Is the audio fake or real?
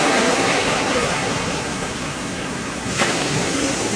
fake